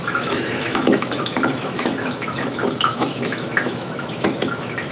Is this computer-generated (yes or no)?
yes